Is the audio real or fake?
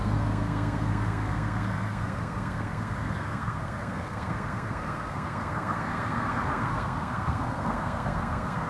fake